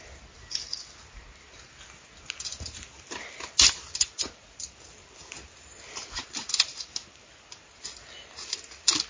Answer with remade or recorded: recorded